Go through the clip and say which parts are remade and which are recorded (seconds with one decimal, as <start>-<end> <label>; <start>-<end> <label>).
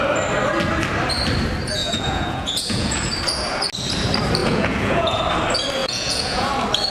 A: 0.0-1.8 recorded; 1.8-3.1 remade; 3.1-4.4 recorded; 4.4-5.2 remade; 5.2-5.8 recorded; 5.8-6.5 remade; 6.5-6.9 recorded